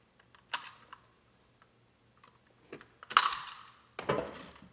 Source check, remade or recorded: recorded